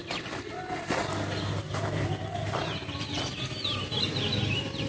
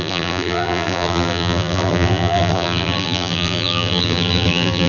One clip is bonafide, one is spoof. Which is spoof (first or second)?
second